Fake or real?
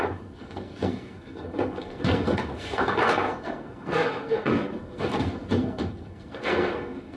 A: fake